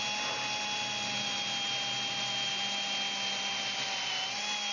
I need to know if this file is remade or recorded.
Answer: recorded